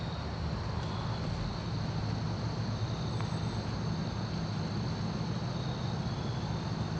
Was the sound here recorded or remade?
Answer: recorded